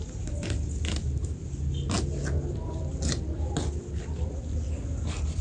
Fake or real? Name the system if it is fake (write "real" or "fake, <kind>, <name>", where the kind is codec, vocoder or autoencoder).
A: real